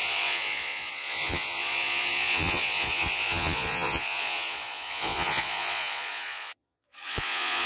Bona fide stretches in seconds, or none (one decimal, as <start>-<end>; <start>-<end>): none